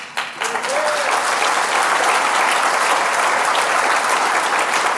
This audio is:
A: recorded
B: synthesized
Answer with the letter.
A